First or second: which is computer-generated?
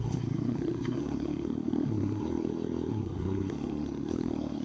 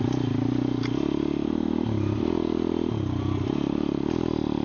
first